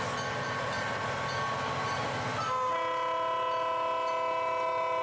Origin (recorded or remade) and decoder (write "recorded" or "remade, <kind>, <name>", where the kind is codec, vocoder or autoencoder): recorded